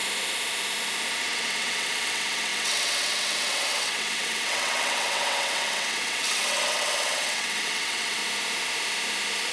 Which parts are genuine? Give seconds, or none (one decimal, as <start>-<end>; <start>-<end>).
0.0-1.2; 8.2-9.5